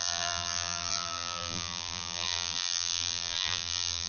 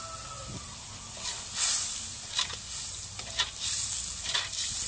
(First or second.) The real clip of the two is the second